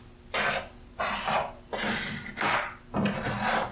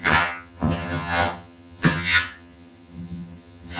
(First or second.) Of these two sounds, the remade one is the second